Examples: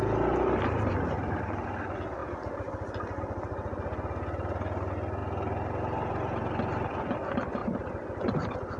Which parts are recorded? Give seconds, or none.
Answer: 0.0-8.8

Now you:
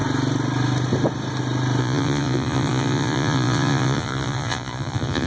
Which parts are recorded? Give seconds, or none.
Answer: 0.0-1.8

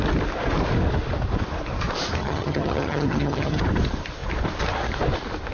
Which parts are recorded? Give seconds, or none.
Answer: 0.0-2.2; 3.6-5.5

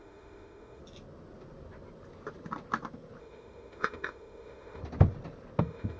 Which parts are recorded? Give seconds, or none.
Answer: 0.8-3.2; 4.8-5.6

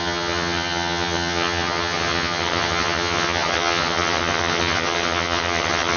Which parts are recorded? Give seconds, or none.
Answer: none

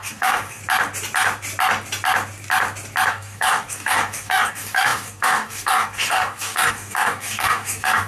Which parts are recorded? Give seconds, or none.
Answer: 0.6-3.1

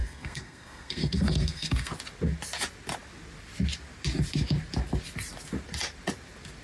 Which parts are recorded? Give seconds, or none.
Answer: 1.9-6.6

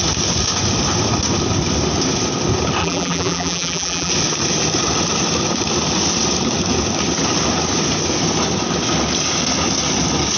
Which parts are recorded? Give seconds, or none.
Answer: 0.0-2.8; 4.1-10.4